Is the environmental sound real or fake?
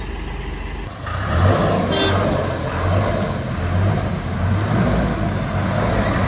real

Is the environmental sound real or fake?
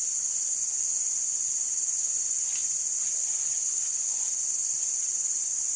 real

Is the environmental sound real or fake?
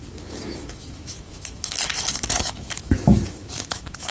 fake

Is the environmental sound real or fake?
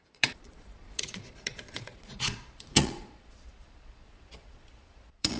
fake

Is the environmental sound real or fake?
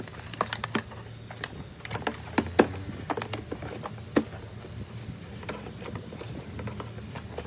real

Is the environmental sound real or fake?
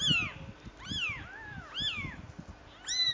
real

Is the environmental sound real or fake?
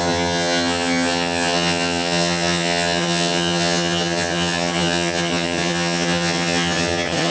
fake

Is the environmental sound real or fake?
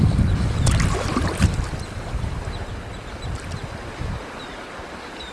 real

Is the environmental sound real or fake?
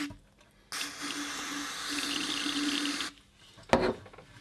real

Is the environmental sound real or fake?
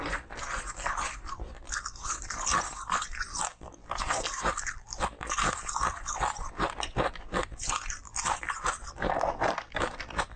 fake